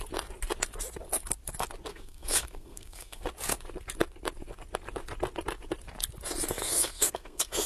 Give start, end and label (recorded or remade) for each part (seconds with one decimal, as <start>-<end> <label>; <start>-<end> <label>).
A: 0.0-1.9 recorded; 1.9-3.2 remade; 3.2-6.6 recorded; 6.6-7.7 remade

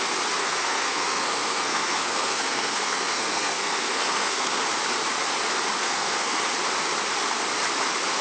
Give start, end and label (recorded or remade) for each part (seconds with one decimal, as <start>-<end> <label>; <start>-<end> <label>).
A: 0.0-0.4 recorded; 0.4-4.6 remade; 4.6-5.8 recorded; 5.8-6.4 remade; 6.4-8.2 recorded

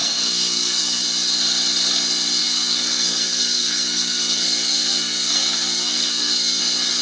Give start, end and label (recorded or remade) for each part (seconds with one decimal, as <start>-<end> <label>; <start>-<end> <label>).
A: 0.0-1.0 remade; 1.0-2.4 recorded; 2.4-6.6 remade; 6.6-7.0 recorded

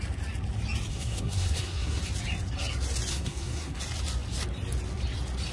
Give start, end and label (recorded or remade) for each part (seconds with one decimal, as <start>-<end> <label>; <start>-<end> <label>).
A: 0.0-0.9 recorded; 0.9-2.0 remade; 2.0-3.1 recorded; 3.1-3.8 remade; 3.8-5.5 recorded

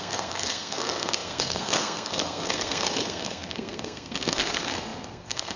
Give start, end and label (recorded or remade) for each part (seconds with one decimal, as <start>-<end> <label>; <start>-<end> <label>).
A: 0.0-5.6 remade

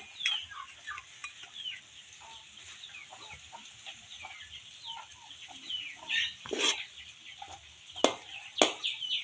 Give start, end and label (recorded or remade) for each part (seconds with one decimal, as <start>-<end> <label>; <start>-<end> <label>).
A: 0.0-9.2 recorded

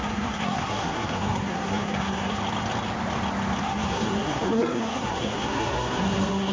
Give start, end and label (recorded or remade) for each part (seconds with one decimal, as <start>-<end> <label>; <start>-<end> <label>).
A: 0.0-2.4 remade; 2.4-3.6 recorded; 3.6-6.5 remade